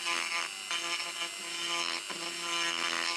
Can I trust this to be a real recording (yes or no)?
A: yes